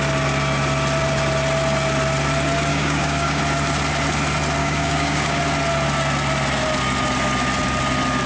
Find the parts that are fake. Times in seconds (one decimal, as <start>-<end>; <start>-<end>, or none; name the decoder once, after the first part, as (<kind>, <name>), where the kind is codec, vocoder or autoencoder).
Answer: 2.7-3.4 (codec, DAC); 4.6-5.4